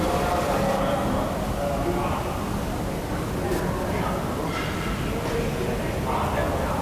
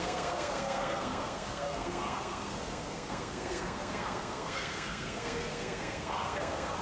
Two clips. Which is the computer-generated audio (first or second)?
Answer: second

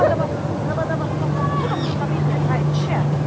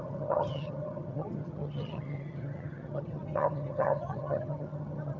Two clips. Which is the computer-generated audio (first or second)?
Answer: second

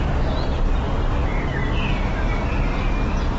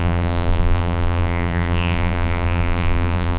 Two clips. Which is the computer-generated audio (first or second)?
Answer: second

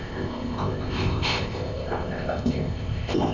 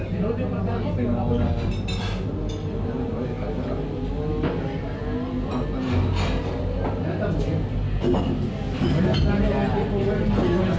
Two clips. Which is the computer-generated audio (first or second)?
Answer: first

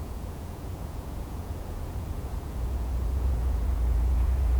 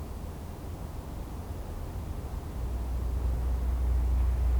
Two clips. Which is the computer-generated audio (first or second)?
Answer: first